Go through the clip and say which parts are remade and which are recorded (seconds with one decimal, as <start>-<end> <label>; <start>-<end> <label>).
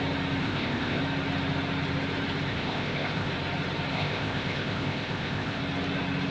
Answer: 0.0-0.4 recorded; 0.4-1.0 remade; 1.0-2.5 recorded; 2.5-3.3 remade; 3.3-3.9 recorded; 3.9-5.6 remade; 5.6-6.3 recorded